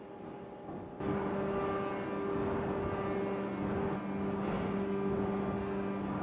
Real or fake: real